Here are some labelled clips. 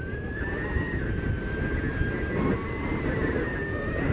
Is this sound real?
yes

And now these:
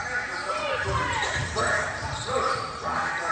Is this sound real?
yes